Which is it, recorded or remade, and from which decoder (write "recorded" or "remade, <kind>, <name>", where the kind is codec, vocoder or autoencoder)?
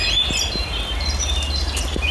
recorded